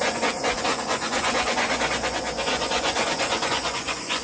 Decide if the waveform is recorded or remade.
remade